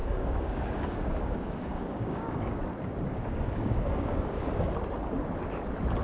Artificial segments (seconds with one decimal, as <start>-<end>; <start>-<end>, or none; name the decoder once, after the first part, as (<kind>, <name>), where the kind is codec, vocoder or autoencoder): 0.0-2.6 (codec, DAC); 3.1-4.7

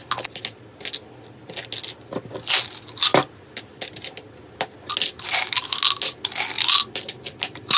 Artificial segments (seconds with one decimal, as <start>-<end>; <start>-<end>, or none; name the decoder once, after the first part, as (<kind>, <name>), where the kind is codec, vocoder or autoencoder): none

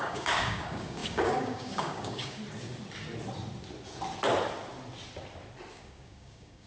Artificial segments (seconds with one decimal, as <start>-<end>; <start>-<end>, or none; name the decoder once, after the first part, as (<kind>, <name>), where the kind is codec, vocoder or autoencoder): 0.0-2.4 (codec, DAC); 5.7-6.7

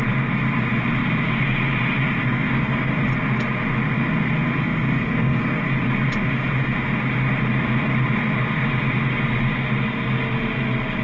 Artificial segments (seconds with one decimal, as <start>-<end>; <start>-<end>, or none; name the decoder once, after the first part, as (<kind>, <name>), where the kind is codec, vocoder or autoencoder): 2.3-3.0 (codec, DAC); 4.7-5.6

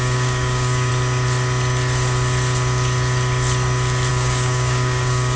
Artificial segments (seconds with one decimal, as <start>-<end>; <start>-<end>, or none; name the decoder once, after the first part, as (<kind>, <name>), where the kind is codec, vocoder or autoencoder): 0.0-0.9 (codec, DAC); 4.1-5.4